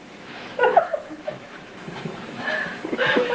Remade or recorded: remade